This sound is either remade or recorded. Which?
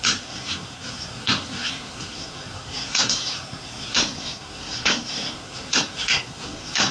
remade